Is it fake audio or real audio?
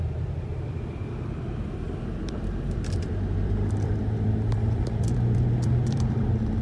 fake